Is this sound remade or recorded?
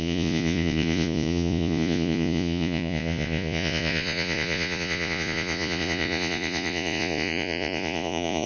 remade